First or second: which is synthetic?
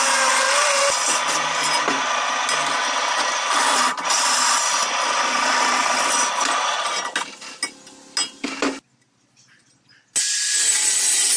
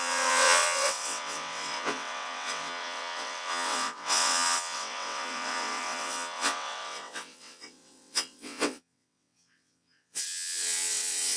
second